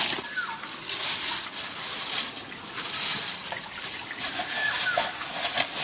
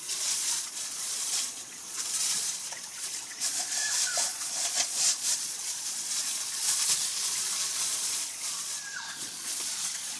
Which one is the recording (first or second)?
first